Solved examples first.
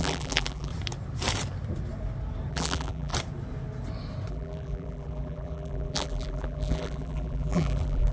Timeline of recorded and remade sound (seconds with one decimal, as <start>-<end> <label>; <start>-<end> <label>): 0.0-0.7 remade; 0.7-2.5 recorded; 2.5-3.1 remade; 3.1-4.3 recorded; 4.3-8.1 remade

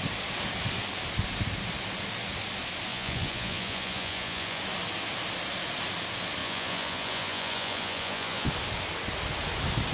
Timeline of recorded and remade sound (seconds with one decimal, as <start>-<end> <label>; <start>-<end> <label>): 0.0-2.9 recorded; 2.9-4.6 remade; 4.6-6.4 recorded; 6.4-8.5 remade; 8.5-9.9 recorded

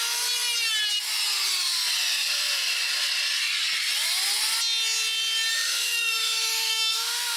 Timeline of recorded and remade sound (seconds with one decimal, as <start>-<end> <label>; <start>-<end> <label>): 0.0-5.5 recorded; 5.5-7.4 remade